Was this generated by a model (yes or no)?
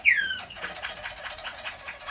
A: yes